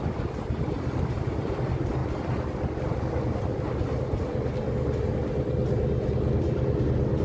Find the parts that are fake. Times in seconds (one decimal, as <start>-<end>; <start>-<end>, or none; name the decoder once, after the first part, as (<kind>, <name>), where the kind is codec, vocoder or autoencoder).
none